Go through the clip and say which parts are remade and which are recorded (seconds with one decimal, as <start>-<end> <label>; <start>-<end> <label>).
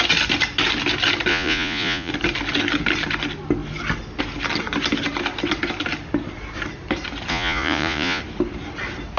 0.0-1.3 recorded; 1.3-2.1 remade; 2.1-7.3 recorded; 7.3-8.2 remade; 8.2-9.2 recorded